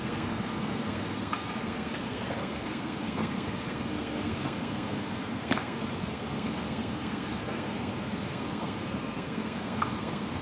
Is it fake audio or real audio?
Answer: fake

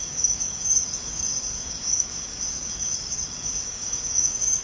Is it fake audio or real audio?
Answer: fake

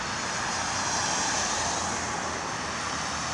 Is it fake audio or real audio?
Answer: real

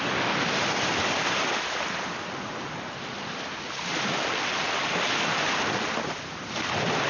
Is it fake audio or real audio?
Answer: real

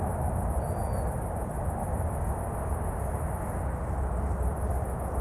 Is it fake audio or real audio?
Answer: real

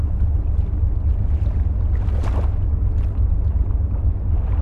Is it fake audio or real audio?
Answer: real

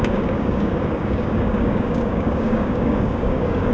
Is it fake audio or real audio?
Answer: fake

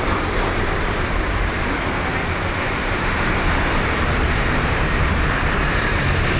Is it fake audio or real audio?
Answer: fake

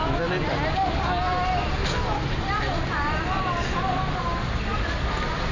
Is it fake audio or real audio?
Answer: real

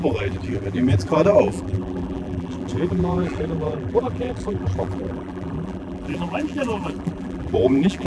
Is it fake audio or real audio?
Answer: fake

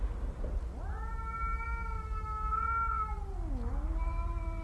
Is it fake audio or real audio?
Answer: real